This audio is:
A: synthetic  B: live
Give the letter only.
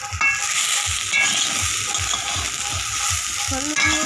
B